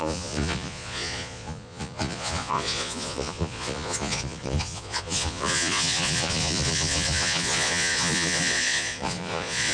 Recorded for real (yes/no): no